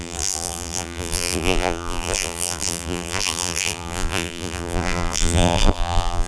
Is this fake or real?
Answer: fake